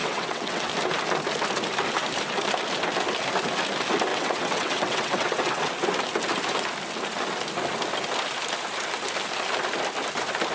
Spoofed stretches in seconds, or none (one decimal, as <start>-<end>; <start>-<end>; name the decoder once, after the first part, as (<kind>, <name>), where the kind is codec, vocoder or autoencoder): 0.0-0.7 (vocoder, WaveNeXt); 4.1-5.7